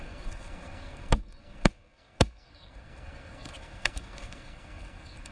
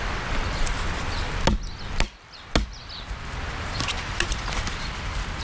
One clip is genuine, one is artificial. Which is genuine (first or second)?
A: second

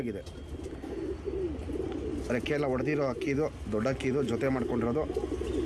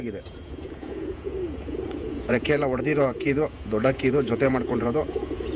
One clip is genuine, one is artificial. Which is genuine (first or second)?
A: first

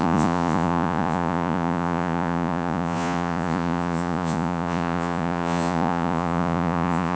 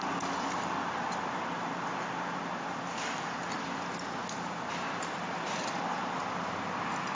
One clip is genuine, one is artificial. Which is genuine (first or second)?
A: second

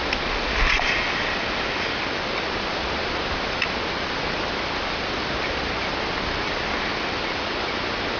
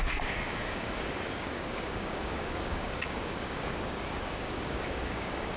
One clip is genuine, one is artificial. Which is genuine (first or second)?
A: first